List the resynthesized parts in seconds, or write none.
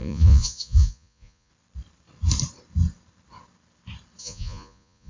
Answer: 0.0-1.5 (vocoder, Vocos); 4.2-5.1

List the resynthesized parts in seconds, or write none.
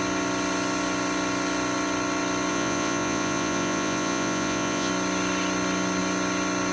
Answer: 2.5-4.9 (vocoder, Vocos)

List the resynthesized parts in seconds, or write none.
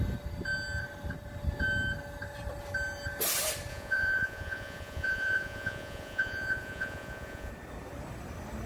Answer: 3.7-7.5 (vocoder, Vocos)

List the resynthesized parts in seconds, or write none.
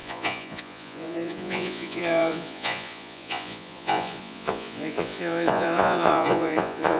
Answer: 0.0-7.0 (vocoder, Vocos)